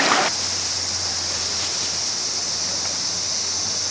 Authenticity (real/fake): real